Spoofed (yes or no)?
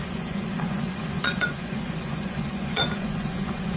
yes